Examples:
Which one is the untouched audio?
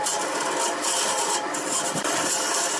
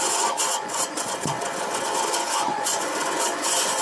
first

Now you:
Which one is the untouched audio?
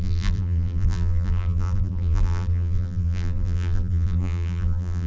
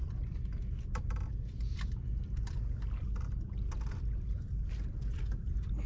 second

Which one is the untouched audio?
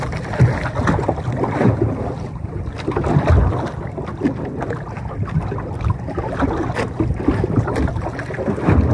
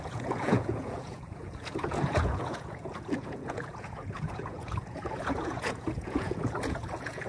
first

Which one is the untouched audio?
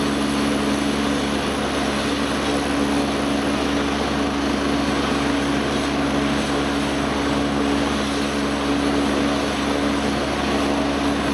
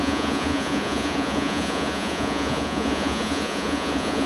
first